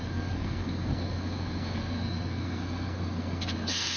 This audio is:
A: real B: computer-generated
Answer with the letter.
B